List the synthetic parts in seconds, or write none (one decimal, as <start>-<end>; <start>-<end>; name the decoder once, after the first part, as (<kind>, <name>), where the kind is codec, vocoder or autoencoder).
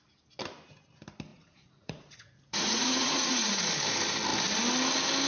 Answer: 1.3-3.6 (vocoder, Vocos)